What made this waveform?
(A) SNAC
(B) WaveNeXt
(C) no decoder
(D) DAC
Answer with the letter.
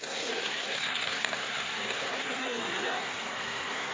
A